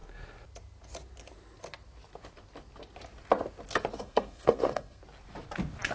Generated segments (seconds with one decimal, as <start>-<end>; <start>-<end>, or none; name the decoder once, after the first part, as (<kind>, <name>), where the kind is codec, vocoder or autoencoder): 3.9-5.0 (codec, SNAC)

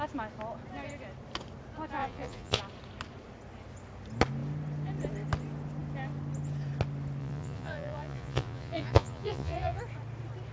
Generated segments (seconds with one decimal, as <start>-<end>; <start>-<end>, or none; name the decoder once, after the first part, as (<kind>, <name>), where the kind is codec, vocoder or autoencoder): 2.0-2.6 (vocoder, Vocos); 7.2-9.8

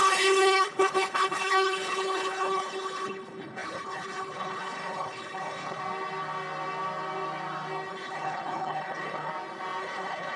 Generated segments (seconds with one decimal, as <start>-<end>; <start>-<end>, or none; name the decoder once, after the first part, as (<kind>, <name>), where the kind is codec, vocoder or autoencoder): 0.0-5.8 (codec, HILCodec); 7.9-9.3; 9.8-10.4

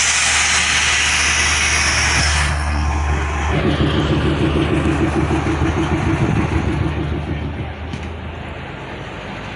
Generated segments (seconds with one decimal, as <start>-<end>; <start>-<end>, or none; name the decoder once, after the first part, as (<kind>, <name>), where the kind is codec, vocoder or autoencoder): 2.2-3.6 (codec, SNAC)

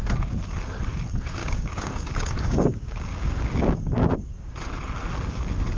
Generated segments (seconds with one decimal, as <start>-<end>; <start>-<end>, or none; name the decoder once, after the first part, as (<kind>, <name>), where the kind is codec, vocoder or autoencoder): 1.4-4.5 (codec, DAC)

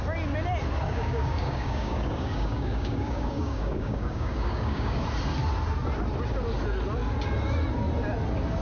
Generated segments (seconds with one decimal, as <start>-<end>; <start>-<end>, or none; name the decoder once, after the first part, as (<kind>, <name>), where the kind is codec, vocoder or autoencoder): 0.9-5.0 (codec, DAC)